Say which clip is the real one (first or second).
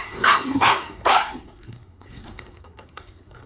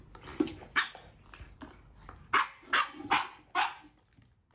second